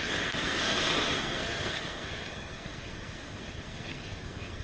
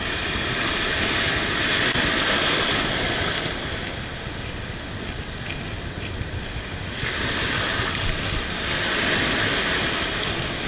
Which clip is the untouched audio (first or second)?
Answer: second